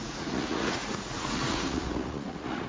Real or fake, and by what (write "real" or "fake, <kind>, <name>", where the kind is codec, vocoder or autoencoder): fake, vocoder, Vocos